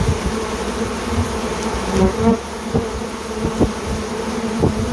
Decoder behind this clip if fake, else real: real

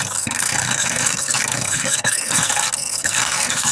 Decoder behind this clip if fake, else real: fake, codec, SNAC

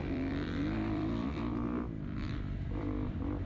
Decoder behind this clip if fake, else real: fake, vocoder, BigVGAN v2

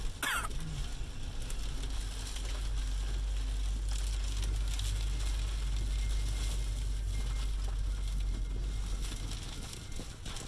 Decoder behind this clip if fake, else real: real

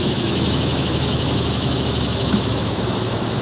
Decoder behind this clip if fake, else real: fake, autoencoder, DAC-VAE